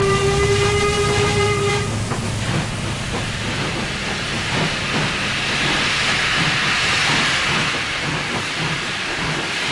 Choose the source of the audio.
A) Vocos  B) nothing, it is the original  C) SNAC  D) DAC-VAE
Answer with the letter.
B